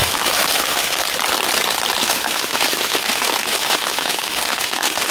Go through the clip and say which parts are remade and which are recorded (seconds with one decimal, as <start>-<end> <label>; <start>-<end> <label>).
0.0-1.0 remade; 1.0-2.0 recorded; 2.0-5.1 remade